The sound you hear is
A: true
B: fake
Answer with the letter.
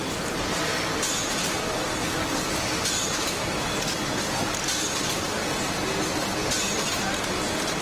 A